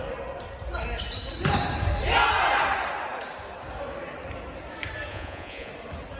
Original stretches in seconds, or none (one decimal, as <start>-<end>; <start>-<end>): 0.0-5.1; 5.7-6.2